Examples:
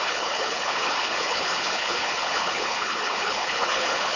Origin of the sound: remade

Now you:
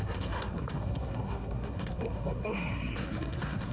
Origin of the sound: remade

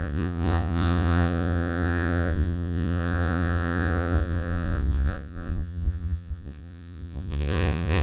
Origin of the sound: remade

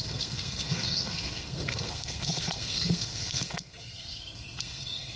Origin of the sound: remade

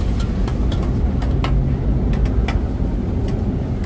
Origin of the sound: recorded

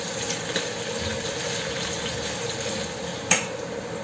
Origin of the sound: recorded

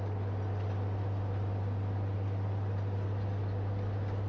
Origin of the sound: recorded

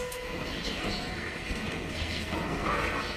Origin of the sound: remade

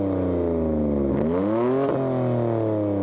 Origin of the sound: recorded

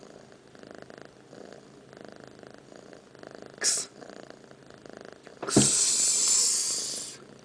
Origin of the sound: recorded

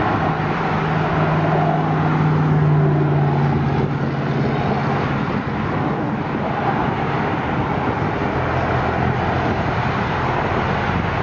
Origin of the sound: recorded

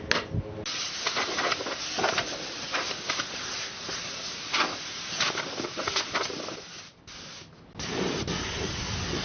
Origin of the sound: recorded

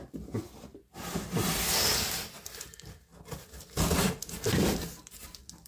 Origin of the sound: recorded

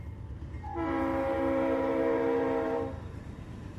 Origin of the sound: remade